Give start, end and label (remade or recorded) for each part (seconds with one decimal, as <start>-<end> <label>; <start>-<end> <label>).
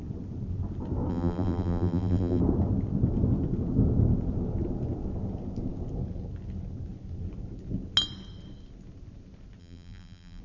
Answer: 0.0-1.1 recorded; 1.1-2.4 remade; 2.4-9.6 recorded; 9.6-10.4 remade